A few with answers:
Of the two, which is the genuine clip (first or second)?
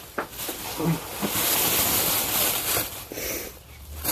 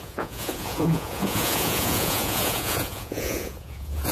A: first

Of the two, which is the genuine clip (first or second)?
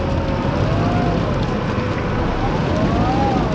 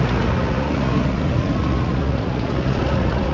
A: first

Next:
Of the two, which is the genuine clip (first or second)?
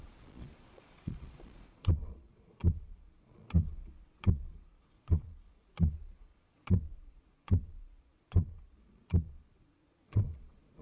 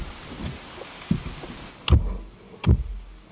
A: second